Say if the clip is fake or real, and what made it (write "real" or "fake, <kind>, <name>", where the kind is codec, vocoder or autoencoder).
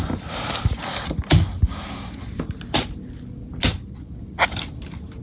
real